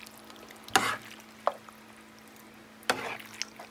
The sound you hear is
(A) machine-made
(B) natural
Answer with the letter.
B